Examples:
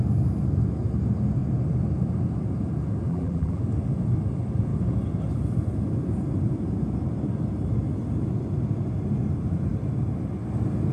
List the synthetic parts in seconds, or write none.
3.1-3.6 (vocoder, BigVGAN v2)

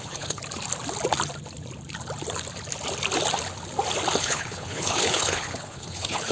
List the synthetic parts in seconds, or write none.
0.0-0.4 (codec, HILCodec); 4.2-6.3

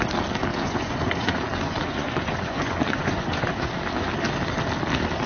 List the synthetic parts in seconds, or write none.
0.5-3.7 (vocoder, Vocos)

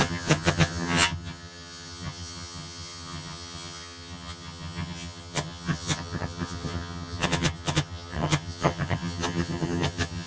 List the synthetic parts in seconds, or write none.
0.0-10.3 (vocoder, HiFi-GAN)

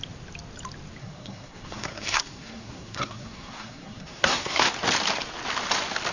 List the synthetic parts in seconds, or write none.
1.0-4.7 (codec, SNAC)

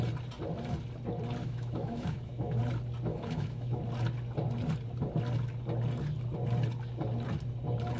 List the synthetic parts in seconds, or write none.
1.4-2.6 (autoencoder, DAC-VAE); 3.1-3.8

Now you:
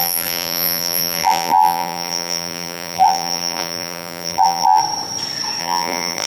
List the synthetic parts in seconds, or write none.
0.0-4.8 (vocoder, BigVGAN v2); 5.6-6.3